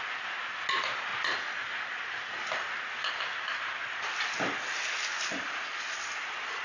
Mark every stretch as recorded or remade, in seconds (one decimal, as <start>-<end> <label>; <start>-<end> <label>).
0.0-6.6 recorded